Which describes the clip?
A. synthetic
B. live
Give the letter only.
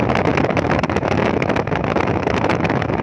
A